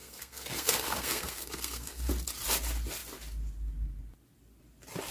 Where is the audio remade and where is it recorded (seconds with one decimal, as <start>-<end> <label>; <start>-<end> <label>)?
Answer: 0.0-2.1 remade; 2.1-5.1 recorded